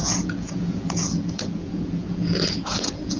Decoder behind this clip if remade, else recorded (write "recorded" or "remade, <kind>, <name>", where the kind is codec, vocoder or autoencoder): remade, vocoder, Vocos